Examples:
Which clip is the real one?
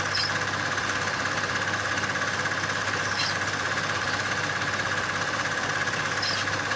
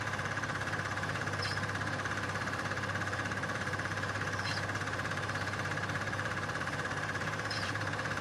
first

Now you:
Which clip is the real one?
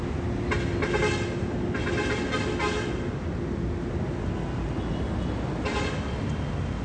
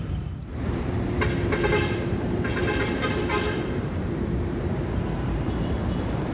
first